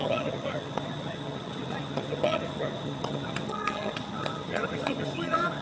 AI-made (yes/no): yes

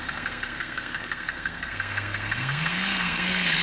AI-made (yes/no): yes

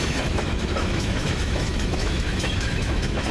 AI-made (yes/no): yes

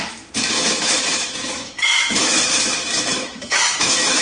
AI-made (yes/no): yes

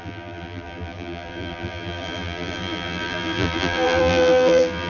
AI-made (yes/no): yes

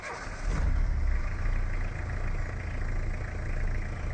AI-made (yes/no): no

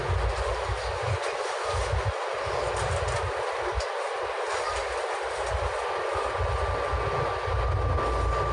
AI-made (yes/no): no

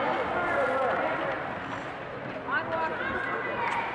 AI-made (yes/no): no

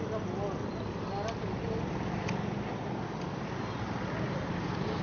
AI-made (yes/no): no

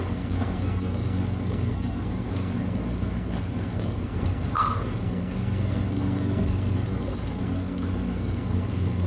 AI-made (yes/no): yes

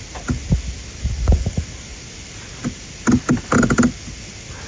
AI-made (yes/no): no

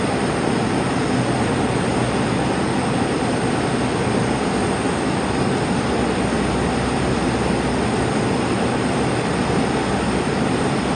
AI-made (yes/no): no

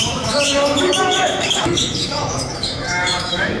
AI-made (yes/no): yes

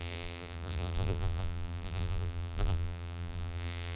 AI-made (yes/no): yes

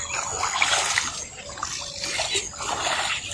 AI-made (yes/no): no